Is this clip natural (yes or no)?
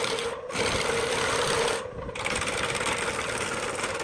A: yes